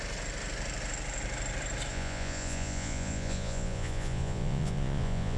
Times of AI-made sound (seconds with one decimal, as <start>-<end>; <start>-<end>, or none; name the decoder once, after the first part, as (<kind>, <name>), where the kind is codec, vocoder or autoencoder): 1.9-5.4 (vocoder, Vocos)